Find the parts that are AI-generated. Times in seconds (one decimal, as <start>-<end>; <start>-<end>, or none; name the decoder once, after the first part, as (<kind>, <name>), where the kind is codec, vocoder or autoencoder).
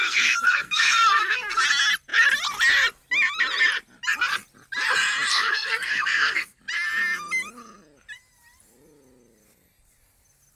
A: 0.0-1.6 (codec, SNAC); 5.3-6.6